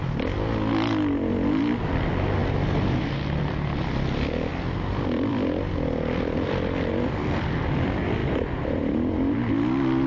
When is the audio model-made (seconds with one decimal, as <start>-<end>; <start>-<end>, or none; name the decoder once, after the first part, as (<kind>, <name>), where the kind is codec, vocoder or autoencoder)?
4.5-7.3 (vocoder, BigVGAN v2); 8.2-8.8